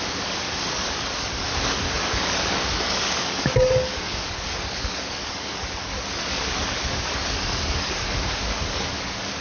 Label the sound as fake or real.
fake